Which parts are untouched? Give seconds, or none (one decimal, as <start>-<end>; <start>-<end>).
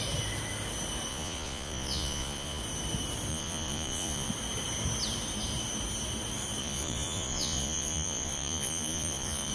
0.0-1.1; 2.6-3.3; 4.3-6.6